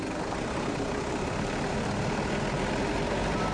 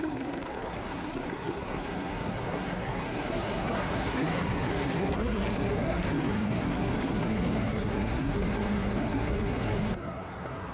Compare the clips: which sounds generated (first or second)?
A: second